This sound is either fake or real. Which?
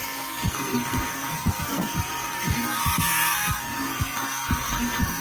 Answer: fake